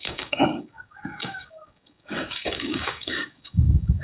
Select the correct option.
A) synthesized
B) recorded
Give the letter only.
A